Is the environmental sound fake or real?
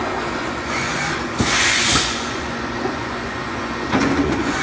fake